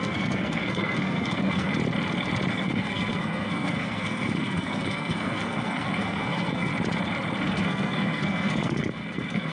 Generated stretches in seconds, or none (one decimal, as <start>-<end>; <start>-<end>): 0.0-1.7; 2.5-6.7; 7.4-9.5